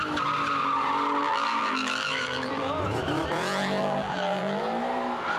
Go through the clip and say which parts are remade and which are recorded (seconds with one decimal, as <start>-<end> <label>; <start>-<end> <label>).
0.0-1.2 recorded; 1.2-2.7 remade; 2.7-3.8 recorded; 3.8-4.6 remade; 4.6-5.4 recorded